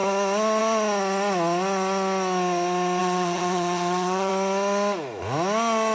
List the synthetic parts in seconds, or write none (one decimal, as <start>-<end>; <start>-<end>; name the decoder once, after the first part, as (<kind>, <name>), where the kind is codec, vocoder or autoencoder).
3.0-4.3 (vocoder, HiFi-GAN)